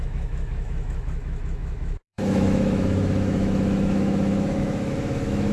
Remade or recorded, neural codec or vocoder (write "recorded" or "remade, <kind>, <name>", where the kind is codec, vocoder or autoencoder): remade, autoencoder, DAC-VAE